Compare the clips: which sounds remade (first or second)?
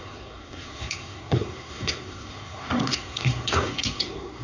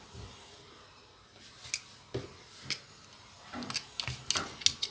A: first